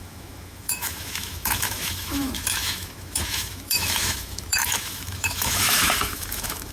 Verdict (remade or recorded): remade